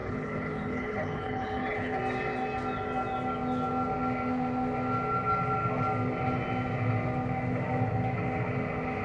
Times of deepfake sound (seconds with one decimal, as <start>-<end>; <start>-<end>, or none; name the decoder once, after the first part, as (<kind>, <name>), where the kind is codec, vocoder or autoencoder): 0.0-2.0 (codec, HILCodec)